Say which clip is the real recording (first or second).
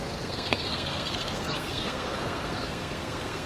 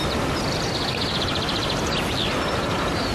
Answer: second